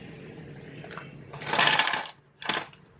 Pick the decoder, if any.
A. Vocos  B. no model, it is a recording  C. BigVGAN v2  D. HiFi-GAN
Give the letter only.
B